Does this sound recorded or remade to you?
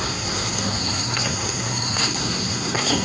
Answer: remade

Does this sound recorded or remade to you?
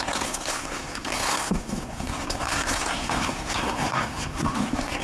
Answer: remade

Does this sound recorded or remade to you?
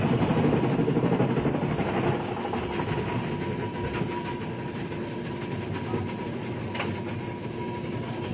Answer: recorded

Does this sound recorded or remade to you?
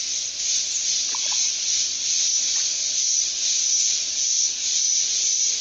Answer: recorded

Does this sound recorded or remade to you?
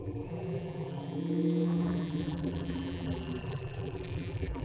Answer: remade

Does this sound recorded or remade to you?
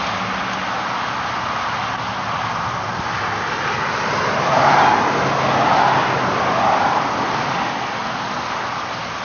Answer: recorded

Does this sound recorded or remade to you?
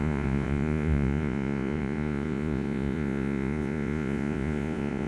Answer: remade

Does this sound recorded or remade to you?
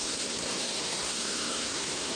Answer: remade